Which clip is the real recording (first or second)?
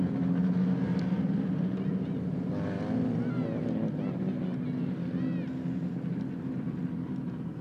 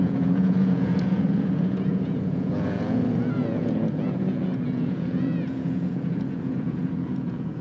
first